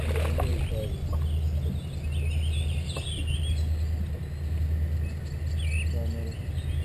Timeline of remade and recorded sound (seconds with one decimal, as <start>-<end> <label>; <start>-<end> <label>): 0.0-6.8 recorded